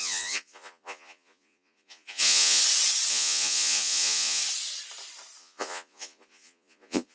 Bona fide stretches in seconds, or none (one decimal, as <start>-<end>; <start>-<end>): 2.6-3.1; 4.4-5.4